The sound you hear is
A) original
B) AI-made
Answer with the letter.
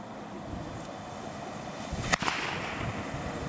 B